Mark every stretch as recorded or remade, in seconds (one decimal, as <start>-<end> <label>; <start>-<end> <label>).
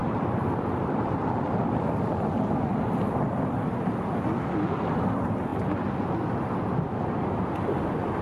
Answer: 0.0-2.6 remade; 2.6-8.2 recorded